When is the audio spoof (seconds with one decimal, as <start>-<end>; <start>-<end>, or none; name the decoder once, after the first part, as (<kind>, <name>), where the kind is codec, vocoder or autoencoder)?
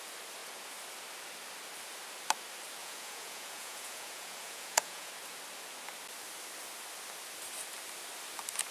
2.8-5.1 (vocoder, Vocos)